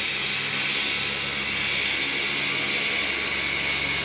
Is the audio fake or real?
real